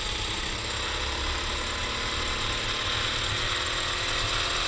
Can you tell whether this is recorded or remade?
recorded